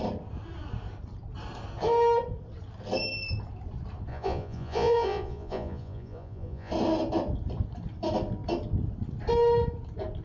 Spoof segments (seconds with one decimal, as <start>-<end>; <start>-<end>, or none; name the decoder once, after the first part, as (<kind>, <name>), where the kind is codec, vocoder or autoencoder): 4.1-6.7 (vocoder, Vocos)